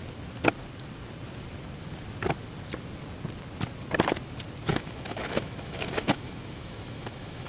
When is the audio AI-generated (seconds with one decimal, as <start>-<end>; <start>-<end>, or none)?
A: 4.7-7.5

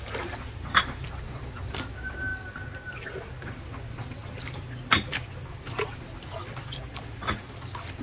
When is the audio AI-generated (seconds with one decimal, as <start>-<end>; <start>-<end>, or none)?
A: none

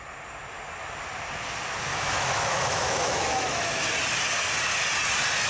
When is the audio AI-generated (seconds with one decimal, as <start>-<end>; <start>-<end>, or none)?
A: 1.9-3.8

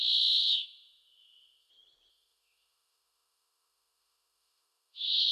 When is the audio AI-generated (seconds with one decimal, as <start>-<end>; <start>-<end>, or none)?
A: 0.4-1.7; 2.1-5.3

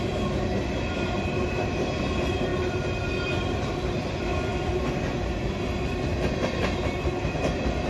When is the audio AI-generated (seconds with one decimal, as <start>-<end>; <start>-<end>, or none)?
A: none

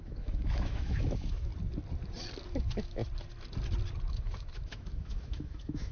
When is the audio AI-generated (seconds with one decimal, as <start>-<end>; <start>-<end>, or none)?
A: 0.0-1.5; 2.5-3.0; 4.1-5.9